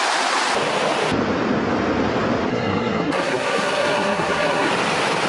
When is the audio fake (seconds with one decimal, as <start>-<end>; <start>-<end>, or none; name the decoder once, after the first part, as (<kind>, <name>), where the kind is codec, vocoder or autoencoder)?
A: 2.5-4.7 (codec, SNAC)